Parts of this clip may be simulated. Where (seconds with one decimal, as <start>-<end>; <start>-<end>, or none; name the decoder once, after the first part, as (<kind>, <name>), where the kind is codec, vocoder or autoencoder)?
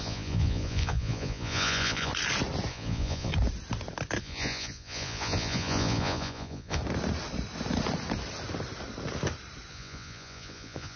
0.0-2.1 (vocoder, Vocos); 2.7-3.3; 4.2-6.8; 9.7-11.0